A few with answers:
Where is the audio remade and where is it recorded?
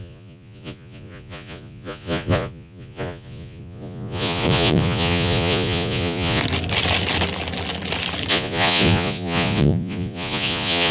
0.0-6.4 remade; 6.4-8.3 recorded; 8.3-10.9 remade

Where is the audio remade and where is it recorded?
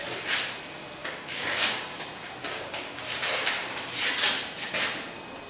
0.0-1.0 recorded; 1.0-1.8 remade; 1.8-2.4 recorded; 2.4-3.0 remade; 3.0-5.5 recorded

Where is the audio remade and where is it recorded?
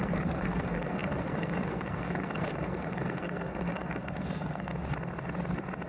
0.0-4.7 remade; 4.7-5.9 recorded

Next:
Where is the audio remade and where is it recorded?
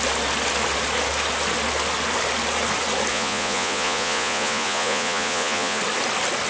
0.0-3.1 recorded; 3.1-5.8 remade; 5.8-6.5 recorded